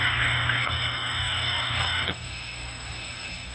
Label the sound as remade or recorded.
remade